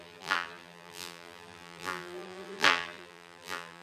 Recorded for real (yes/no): no